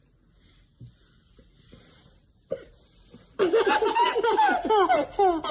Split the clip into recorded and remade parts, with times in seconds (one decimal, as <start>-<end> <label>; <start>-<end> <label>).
0.0-5.5 recorded